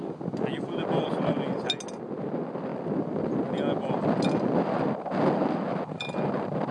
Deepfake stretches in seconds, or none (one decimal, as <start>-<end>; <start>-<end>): none